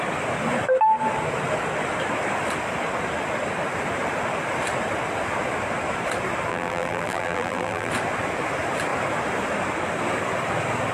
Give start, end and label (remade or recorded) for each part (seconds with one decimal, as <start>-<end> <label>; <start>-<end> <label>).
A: 0.0-6.5 recorded; 6.5-7.9 remade; 7.9-10.9 recorded

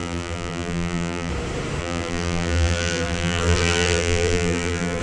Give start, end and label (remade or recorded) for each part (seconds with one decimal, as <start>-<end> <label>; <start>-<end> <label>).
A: 0.0-1.3 remade; 1.3-1.8 recorded; 1.8-5.0 remade

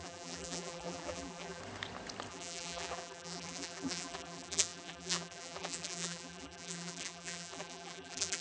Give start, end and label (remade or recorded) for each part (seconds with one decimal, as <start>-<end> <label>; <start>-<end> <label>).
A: 0.0-1.6 remade; 1.6-2.3 recorded; 2.3-8.4 remade

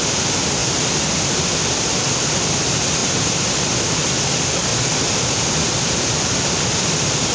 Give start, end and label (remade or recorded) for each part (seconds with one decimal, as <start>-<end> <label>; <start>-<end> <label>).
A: 0.0-0.6 remade; 0.6-2.2 recorded; 2.2-3.0 remade; 3.0-4.2 recorded; 4.2-4.7 remade; 4.7-6.7 recorded; 6.7-7.3 remade

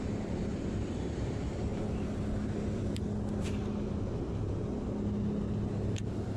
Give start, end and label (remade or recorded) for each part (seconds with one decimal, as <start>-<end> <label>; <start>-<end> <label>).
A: 0.0-0.5 recorded; 0.5-1.2 remade; 1.2-6.4 recorded